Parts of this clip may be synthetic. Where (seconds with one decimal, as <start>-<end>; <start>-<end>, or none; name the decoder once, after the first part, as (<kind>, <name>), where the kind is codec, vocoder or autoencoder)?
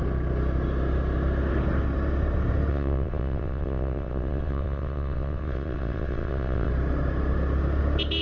2.7-6.7 (vocoder, WaveNeXt)